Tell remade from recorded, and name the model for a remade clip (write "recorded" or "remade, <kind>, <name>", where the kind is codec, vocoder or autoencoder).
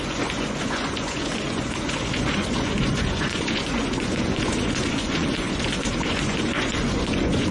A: remade, vocoder, Vocos